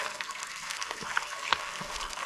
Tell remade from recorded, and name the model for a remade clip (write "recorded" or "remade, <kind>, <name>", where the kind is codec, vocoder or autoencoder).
remade, codec, SNAC